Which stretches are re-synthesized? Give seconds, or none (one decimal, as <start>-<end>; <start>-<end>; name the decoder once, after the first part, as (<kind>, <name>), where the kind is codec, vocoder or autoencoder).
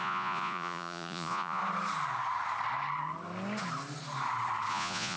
0.0-1.6 (vocoder, Vocos); 4.7-5.2